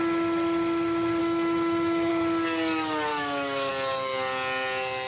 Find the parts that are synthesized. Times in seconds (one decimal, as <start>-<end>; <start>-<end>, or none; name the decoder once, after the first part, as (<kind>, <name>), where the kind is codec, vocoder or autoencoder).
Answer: 1.2-2.1 (autoencoder, DAC-VAE); 3.1-3.7